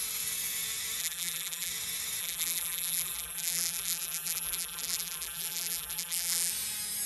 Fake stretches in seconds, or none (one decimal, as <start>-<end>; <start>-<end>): 1.0-1.7; 2.2-6.5